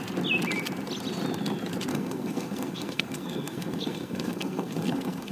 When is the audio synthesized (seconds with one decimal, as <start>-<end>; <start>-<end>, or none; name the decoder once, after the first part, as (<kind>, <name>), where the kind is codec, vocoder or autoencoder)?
1.9-5.3 (codec, SNAC)

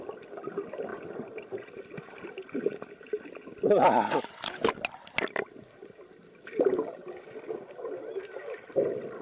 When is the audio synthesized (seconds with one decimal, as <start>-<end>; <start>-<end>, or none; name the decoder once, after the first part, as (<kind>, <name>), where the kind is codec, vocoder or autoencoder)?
none

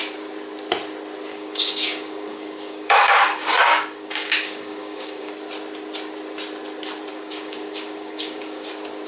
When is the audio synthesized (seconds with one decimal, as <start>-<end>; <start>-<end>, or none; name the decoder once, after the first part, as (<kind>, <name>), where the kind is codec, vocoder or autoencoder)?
1.3-5.3 (codec, DAC); 7.1-8.7

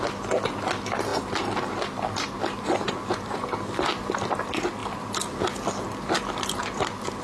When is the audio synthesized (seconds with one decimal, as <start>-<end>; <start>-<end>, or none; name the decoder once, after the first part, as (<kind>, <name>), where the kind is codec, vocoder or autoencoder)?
none

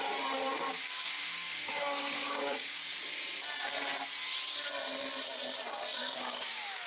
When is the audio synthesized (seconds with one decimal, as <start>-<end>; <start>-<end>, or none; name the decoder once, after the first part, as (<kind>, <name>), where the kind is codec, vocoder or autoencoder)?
0.5-2.8 (codec, DAC); 6.0-6.9